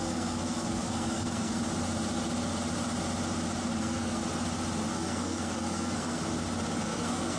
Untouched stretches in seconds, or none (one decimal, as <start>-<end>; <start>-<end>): 1.6-3.8; 4.2-4.9; 6.2-6.8